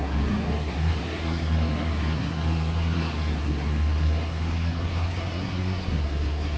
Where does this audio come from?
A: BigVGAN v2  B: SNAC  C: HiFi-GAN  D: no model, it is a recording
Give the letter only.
B